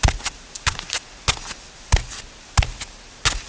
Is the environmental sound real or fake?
real